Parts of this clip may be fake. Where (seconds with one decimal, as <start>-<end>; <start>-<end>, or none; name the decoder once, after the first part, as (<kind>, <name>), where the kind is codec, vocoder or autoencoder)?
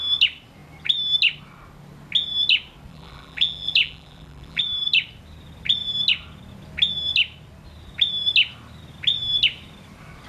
2.9-4.6 (vocoder, BigVGAN v2)